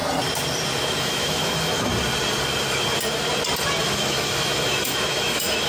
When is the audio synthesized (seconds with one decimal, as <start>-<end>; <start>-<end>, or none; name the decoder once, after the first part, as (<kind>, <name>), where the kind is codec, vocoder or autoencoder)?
1.0-1.9 (autoencoder, DAC-VAE); 3.8-5.7